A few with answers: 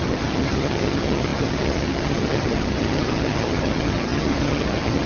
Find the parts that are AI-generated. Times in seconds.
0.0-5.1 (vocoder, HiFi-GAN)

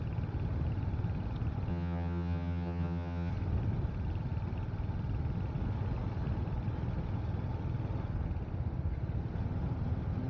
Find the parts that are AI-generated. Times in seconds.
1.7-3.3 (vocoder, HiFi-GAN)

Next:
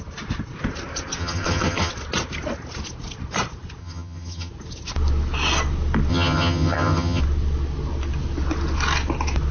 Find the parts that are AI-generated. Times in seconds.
1.2-1.9 (vocoder, HiFi-GAN); 3.8-4.5; 6.1-7.2

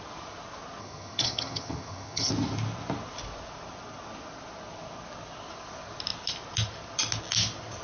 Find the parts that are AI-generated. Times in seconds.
0.8-2.3 (vocoder, HiFi-GAN)